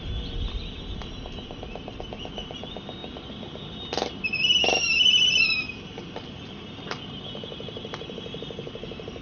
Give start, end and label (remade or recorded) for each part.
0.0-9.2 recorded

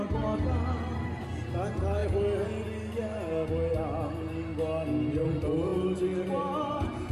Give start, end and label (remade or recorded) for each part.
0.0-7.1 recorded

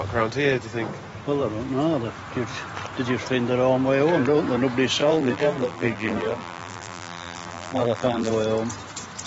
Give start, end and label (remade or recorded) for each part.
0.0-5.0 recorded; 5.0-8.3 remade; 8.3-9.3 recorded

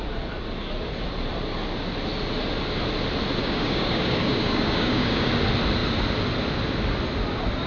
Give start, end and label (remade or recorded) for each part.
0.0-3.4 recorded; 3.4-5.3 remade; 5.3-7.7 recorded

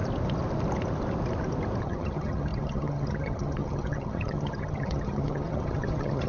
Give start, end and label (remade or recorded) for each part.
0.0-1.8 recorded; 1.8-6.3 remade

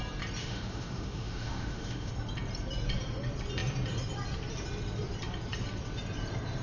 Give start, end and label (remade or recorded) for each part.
0.0-0.4 recorded; 0.4-2.1 remade; 2.1-6.6 recorded